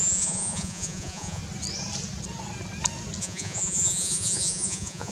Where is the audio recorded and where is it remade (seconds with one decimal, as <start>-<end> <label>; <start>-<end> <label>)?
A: 0.0-1.4 remade; 1.4-3.2 recorded; 3.2-5.1 remade